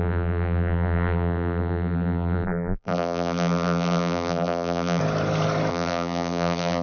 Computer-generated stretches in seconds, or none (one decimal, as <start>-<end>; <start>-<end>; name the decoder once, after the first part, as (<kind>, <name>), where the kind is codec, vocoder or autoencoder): 0.0-5.0 (vocoder, BigVGAN v2); 5.7-6.8